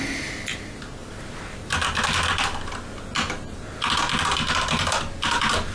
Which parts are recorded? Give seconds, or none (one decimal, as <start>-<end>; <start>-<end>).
0.0-5.7